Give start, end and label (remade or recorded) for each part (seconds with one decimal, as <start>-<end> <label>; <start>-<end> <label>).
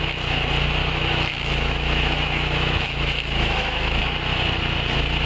0.0-0.8 recorded; 0.8-4.0 remade; 4.0-5.3 recorded